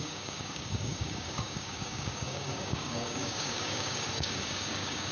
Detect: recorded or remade remade